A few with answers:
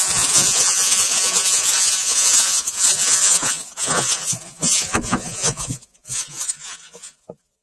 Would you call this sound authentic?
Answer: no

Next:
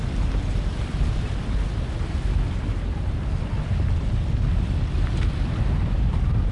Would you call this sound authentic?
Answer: yes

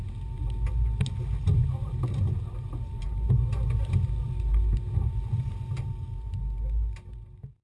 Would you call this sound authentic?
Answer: yes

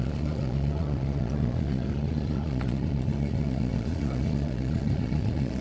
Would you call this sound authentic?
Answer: no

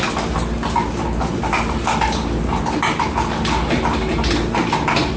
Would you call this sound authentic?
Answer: yes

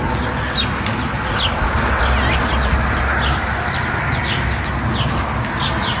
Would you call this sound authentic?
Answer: yes